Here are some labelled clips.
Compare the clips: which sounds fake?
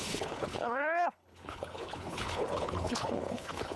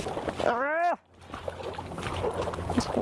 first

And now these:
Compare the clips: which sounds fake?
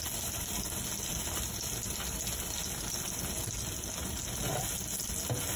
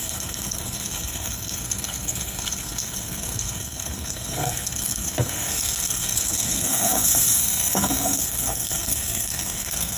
second